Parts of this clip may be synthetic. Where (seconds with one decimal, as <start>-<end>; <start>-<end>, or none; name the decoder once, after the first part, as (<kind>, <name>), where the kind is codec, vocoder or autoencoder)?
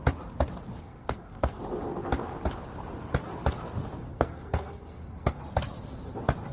0.8-1.6 (codec, SNAC); 4.1-5.4